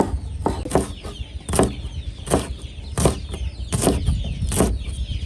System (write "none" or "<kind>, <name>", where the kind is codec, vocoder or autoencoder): none